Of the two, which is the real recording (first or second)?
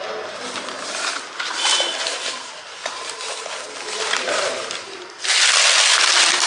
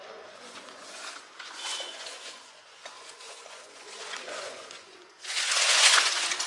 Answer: first